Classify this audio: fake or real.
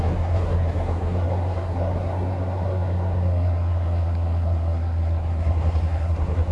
fake